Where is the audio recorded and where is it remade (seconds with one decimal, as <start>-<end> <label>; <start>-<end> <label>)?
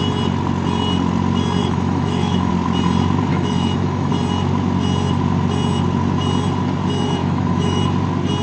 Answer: 0.0-1.6 recorded; 1.6-2.5 remade; 2.5-3.3 recorded; 3.3-4.1 remade; 4.1-7.2 recorded; 7.2-7.8 remade; 7.8-8.4 recorded